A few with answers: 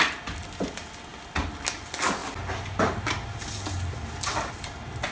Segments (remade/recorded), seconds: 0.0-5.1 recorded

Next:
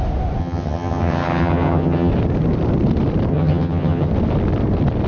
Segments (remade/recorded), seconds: 0.0-0.4 recorded; 0.4-2.1 remade; 2.1-3.3 recorded; 3.3-4.1 remade; 4.1-5.1 recorded

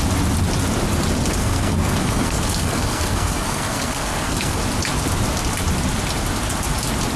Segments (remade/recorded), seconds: 0.0-1.4 recorded; 1.4-4.6 remade; 4.6-7.2 recorded